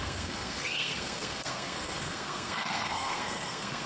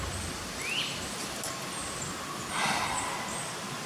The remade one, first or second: first